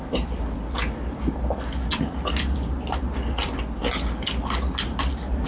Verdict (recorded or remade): recorded